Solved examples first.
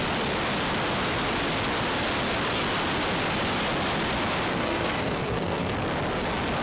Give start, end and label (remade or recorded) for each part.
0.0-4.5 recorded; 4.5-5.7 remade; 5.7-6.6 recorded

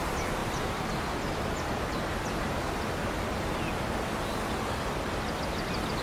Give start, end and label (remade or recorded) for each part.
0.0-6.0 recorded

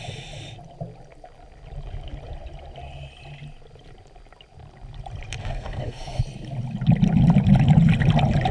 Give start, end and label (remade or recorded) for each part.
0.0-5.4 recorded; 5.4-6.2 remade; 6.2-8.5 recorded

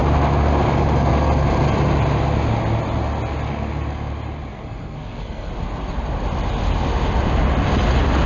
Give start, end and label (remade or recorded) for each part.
0.0-4.5 recorded; 4.5-5.5 remade; 5.5-8.3 recorded